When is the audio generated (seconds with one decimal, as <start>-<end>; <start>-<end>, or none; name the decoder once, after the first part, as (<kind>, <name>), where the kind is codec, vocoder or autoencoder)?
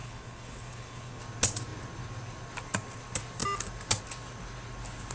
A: 0.0-1.2 (codec, HILCodec)